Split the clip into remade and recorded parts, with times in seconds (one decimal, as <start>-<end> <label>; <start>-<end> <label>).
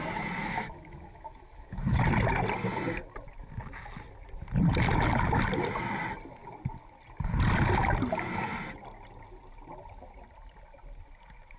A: 0.0-0.4 recorded; 0.4-2.0 remade; 2.0-11.6 recorded